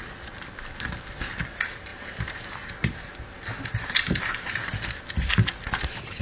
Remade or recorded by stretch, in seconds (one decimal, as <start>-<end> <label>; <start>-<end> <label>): 0.0-1.9 recorded; 1.9-5.0 remade; 5.0-5.5 recorded; 5.5-6.2 remade